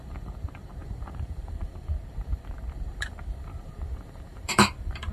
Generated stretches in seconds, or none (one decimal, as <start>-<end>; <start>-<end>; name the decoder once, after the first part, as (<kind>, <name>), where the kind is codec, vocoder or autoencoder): 0.8-2.0 (vocoder, BigVGAN v2); 2.9-5.1